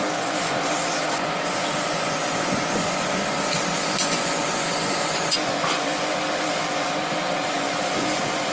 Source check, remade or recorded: remade